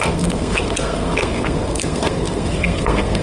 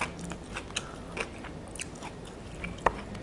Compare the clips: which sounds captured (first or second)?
second